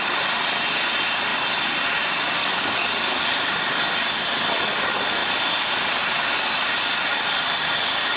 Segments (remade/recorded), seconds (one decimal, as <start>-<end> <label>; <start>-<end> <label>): 0.0-2.4 recorded; 2.4-3.2 remade; 3.2-8.2 recorded